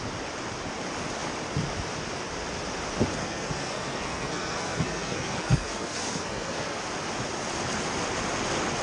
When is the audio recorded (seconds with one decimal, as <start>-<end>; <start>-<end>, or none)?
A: 0.0-3.2; 6.8-8.8